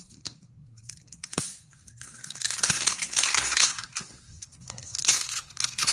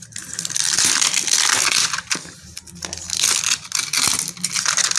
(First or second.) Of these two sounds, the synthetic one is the first